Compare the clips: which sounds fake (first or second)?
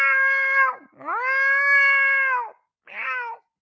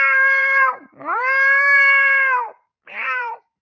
second